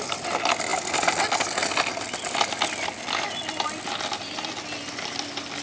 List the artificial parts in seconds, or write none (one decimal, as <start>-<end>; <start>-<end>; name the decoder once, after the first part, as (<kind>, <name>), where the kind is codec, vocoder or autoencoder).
none